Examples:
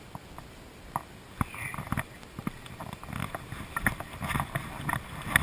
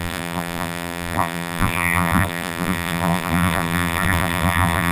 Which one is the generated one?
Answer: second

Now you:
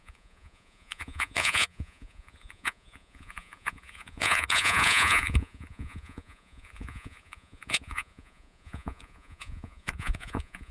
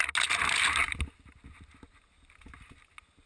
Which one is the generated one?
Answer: first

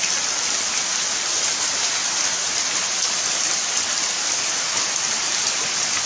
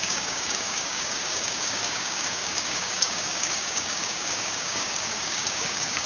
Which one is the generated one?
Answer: second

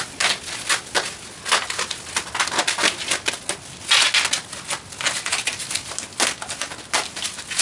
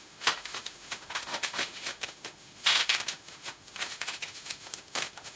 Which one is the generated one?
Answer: second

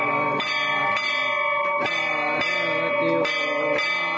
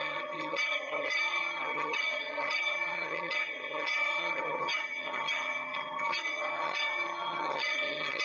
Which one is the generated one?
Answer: second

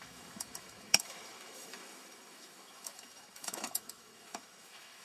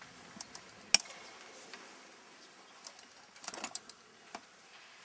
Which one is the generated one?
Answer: first